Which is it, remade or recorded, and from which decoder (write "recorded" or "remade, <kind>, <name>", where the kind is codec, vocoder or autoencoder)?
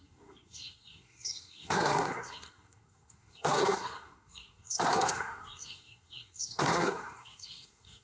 remade, codec, SNAC